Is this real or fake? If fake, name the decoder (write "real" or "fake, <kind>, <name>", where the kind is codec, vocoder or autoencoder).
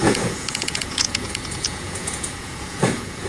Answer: fake, vocoder, Vocos